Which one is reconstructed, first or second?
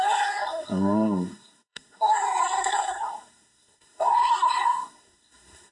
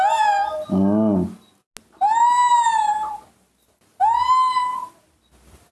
first